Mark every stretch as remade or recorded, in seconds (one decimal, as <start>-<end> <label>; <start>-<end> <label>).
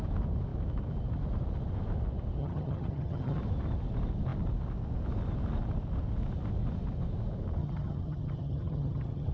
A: 0.0-2.4 recorded; 2.4-3.4 remade; 3.4-7.6 recorded; 7.6-9.3 remade